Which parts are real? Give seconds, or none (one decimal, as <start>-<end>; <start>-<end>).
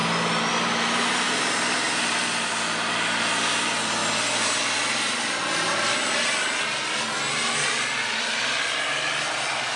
0.0-9.8